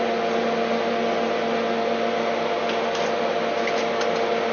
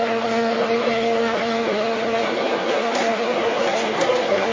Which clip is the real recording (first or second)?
first